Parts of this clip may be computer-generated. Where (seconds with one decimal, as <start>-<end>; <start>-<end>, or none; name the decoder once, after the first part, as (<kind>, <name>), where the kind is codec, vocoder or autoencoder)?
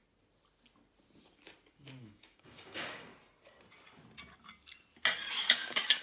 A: 2.0-3.1 (codec, DAC); 5.4-6.0